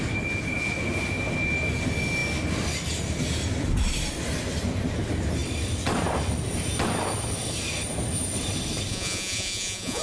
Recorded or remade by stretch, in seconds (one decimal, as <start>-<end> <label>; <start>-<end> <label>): 0.0-8.9 recorded; 8.9-10.0 remade